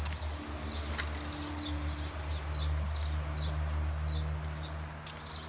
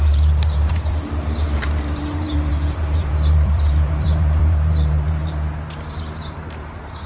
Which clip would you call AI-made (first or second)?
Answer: second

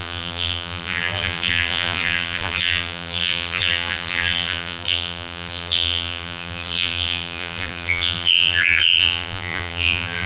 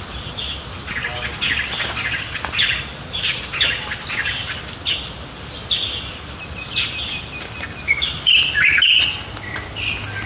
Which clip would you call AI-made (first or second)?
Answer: first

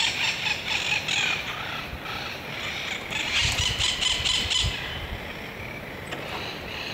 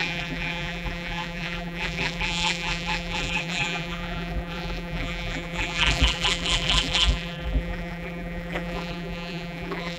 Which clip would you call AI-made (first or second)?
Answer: second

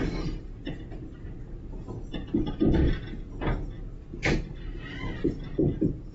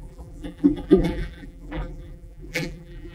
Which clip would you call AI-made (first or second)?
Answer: second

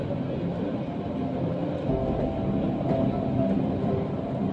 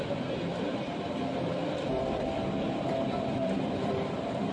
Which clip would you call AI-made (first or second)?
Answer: second